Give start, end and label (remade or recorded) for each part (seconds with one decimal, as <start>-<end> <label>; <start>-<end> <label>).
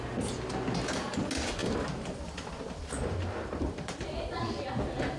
0.0-1.6 recorded; 1.6-4.7 remade; 4.7-5.2 recorded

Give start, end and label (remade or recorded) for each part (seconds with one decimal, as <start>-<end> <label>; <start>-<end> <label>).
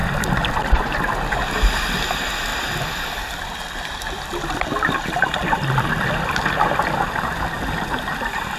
0.0-2.5 recorded; 2.5-6.2 remade; 6.2-8.6 recorded